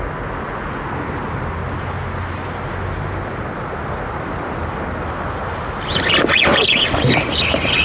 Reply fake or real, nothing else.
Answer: real